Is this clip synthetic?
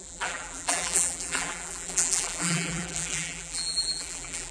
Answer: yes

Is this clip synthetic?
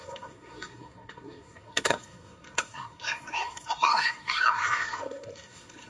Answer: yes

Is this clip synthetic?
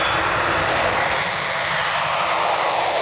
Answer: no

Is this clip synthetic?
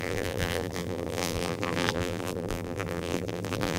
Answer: yes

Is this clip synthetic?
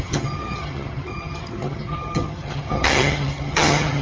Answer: yes